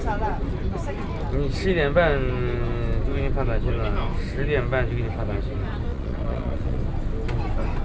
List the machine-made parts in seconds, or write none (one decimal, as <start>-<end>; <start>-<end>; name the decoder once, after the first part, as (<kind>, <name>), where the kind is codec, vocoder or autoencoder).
5.9-6.8 (vocoder, Vocos)